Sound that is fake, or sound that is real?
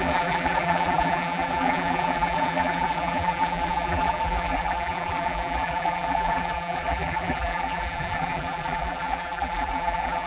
fake